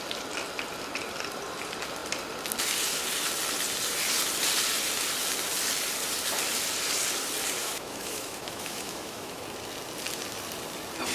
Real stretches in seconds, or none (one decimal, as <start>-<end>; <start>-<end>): 0.0-7.6; 9.4-11.1